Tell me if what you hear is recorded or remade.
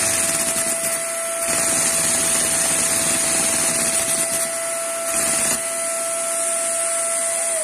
recorded